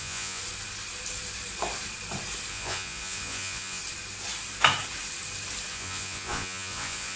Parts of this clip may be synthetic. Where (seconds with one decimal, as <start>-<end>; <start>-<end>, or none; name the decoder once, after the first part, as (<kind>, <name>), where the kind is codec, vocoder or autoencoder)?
0.0-0.4 (vocoder, Vocos); 2.5-3.8; 5.7-7.2